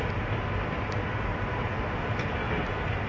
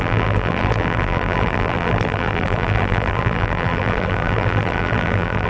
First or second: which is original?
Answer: first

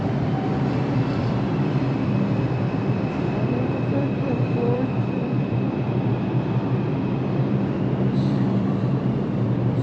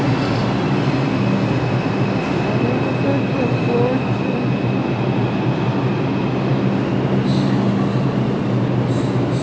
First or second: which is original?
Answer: second